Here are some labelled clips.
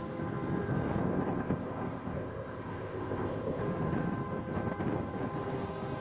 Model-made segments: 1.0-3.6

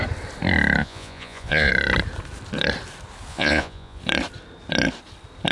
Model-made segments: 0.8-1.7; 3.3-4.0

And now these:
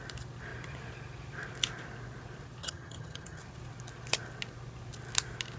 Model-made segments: 2.6-3.4